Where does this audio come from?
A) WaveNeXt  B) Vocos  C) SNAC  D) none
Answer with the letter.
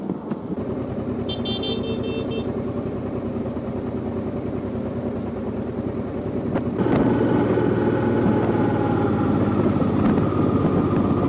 D